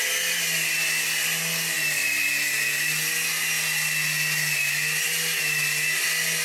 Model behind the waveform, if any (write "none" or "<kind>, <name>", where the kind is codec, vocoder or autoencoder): none